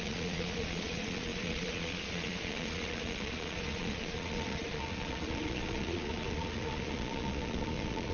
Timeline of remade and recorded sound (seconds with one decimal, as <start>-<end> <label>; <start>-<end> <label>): 0.0-8.1 remade